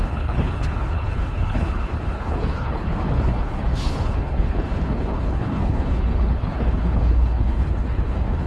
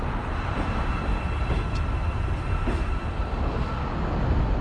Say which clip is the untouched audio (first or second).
second